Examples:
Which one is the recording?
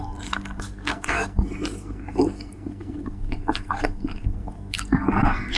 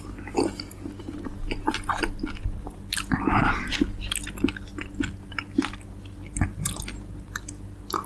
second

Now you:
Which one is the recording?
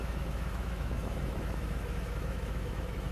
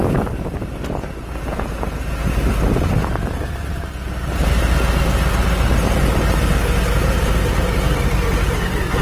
second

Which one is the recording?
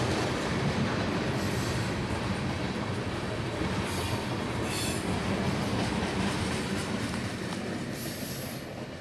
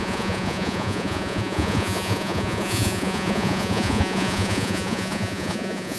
first